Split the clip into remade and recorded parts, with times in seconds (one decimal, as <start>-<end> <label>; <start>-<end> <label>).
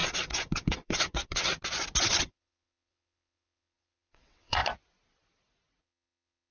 0.0-1.5 remade; 1.5-2.0 recorded; 2.0-4.6 remade; 4.6-5.8 recorded; 5.8-6.5 remade